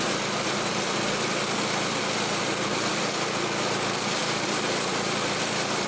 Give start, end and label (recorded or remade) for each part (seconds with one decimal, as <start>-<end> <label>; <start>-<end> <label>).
0.0-5.9 recorded